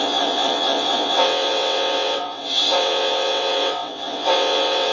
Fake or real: fake